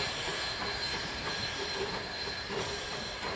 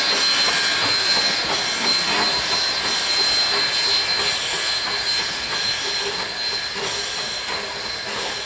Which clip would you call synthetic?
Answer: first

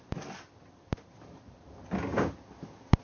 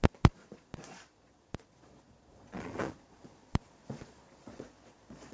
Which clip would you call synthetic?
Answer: second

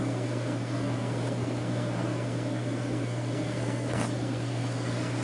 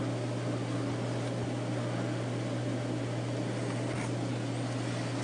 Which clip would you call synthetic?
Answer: first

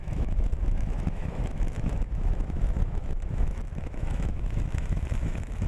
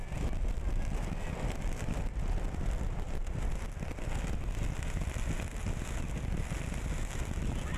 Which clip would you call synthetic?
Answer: first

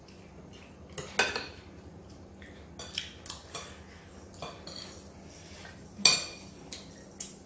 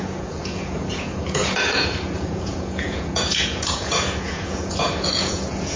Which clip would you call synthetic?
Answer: second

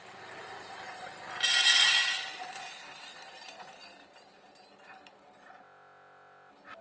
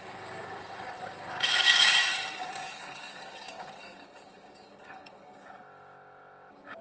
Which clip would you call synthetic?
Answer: second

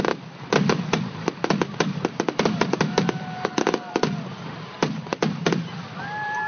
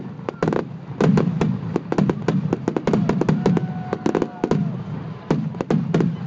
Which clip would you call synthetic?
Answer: first